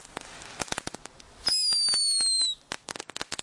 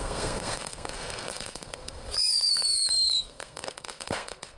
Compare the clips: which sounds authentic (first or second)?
first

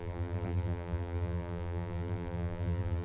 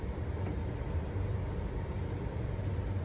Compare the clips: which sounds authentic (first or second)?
second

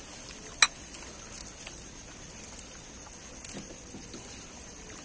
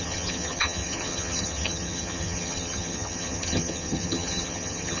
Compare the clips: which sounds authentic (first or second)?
first